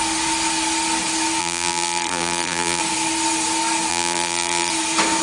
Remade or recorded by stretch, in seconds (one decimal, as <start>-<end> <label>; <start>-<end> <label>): 0.0-1.4 recorded; 1.4-2.8 remade; 2.8-3.9 recorded; 3.9-4.7 remade; 4.7-5.2 recorded